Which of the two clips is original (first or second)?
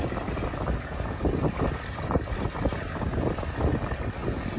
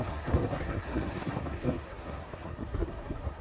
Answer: first